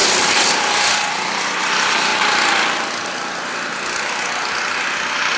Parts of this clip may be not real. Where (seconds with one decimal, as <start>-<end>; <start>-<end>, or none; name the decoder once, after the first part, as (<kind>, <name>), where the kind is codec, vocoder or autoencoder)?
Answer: 0.0-1.1 (vocoder, BigVGAN v2)